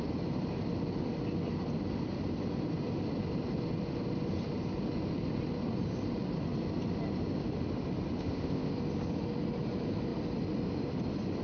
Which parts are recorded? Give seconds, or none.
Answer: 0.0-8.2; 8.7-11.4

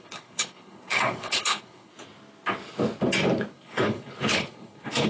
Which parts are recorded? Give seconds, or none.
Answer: 1.9-3.5

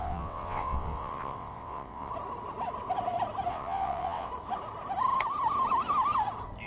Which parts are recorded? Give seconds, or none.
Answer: 2.1-3.5; 4.3-6.7

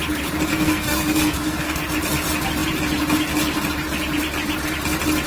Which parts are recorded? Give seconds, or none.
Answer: 0.0-0.5; 1.9-5.3